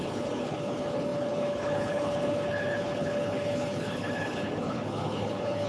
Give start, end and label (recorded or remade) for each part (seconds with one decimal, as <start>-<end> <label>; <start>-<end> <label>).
0.0-5.7 remade